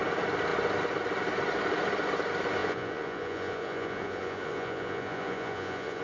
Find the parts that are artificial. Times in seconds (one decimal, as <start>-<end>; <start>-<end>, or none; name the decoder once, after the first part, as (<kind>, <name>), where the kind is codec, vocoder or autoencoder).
2.6-6.0 (vocoder, Vocos)